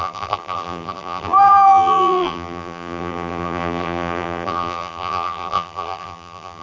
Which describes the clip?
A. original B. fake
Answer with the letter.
B